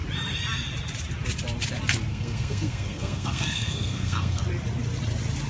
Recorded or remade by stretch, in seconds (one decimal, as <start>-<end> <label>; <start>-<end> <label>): 0.0-2.1 recorded; 2.1-4.4 remade; 4.4-5.5 recorded